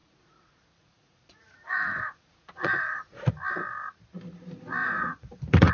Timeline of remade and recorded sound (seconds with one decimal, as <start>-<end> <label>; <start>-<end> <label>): 0.0-3.3 remade; 3.3-4.8 recorded; 4.8-5.7 remade

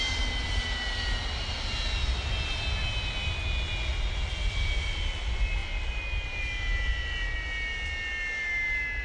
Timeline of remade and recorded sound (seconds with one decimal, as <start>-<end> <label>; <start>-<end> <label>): 0.0-9.0 recorded